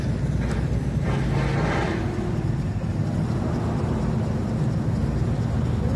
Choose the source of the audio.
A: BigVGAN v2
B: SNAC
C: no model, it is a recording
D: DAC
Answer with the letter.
C